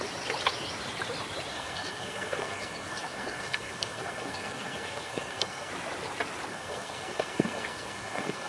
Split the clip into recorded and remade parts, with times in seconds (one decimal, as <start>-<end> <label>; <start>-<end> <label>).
0.0-1.5 recorded; 1.5-5.7 remade; 5.7-6.5 recorded; 6.5-8.5 remade